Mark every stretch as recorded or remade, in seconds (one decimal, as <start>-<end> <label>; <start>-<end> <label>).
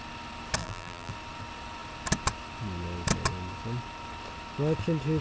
0.0-0.6 recorded; 0.6-1.1 remade; 1.1-5.2 recorded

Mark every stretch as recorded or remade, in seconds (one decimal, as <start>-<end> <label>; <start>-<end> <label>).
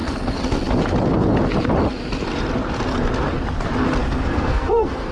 0.0-4.0 recorded; 4.0-5.1 remade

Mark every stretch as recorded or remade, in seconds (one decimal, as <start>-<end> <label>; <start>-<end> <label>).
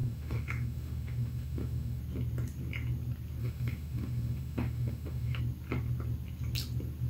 0.0-2.0 remade; 2.0-3.4 recorded; 3.4-5.4 remade; 5.4-7.1 recorded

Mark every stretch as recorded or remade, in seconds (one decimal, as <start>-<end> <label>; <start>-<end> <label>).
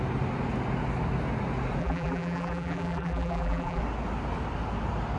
0.0-1.8 recorded; 1.8-3.8 remade; 3.8-5.2 recorded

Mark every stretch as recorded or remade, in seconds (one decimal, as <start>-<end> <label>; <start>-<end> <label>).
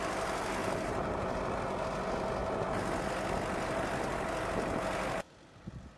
0.0-0.6 recorded; 0.6-1.3 remade; 1.3-6.0 recorded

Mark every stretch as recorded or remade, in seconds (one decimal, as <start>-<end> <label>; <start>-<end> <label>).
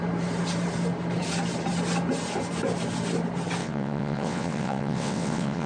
0.0-3.6 recorded; 3.6-5.7 remade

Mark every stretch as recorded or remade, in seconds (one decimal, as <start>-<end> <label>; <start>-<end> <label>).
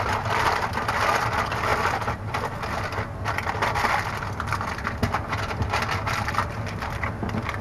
0.0-7.6 recorded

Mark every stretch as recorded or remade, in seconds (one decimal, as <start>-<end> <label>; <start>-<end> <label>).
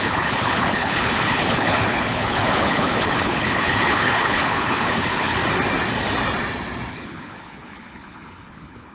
0.0-5.4 remade; 5.4-6.9 recorded; 6.9-8.9 remade